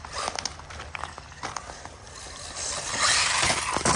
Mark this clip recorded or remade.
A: recorded